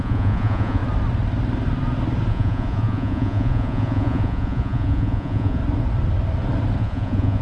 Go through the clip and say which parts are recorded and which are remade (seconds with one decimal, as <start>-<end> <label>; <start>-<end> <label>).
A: 0.0-0.8 remade; 0.8-2.3 recorded; 2.3-5.6 remade; 5.6-6.8 recorded; 6.8-7.4 remade